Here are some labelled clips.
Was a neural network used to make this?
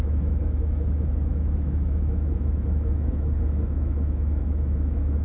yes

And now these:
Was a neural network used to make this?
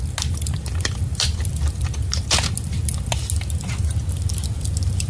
no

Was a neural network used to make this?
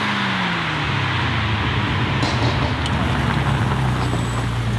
no